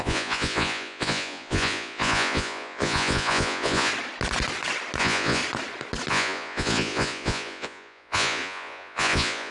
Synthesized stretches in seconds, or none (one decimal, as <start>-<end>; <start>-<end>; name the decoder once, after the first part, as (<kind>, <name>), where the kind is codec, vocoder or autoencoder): 0.0-3.9 (vocoder, Vocos); 5.0-5.4; 6.1-9.5